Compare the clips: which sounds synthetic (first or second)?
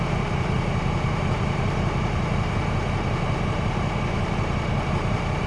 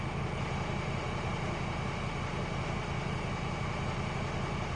first